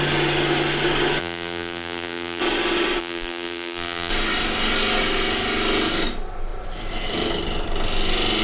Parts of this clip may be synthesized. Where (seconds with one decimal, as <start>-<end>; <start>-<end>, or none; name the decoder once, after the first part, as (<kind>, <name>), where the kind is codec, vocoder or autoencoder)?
1.2-2.4 (vocoder, BigVGAN v2); 3.0-4.1